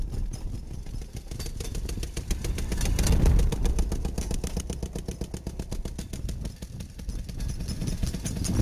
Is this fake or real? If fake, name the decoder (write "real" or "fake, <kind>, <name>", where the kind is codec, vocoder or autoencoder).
real